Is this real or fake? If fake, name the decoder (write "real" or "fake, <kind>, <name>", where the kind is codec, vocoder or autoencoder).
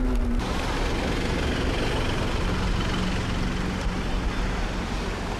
real